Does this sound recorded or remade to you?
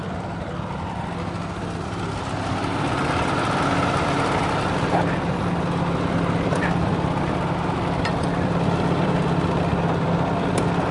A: recorded